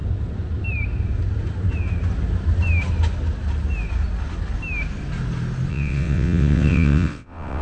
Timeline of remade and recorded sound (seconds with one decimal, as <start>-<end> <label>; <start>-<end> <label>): 0.0-5.7 recorded; 5.7-7.6 remade